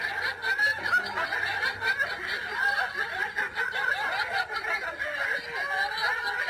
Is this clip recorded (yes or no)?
yes